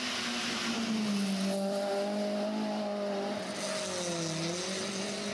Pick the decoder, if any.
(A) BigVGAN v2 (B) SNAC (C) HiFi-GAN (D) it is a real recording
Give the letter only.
D